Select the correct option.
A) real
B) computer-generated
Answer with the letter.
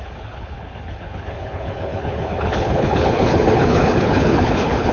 B